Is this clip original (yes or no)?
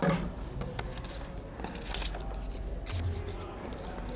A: yes